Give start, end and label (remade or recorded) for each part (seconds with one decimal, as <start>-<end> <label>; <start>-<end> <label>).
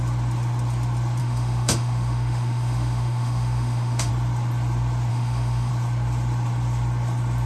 0.0-1.2 recorded; 1.2-4.1 remade; 4.1-5.1 recorded; 5.1-5.7 remade; 5.7-7.5 recorded